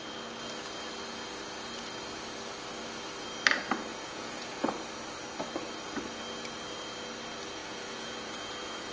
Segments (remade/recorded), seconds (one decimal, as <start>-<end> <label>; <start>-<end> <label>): 0.0-3.9 recorded; 3.9-4.7 remade; 4.7-7.6 recorded; 7.6-8.9 remade